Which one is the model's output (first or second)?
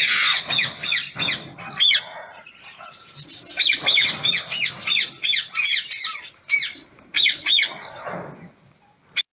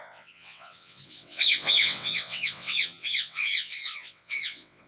second